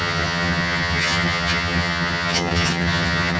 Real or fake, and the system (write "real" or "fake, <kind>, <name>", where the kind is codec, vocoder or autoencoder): fake, vocoder, HiFi-GAN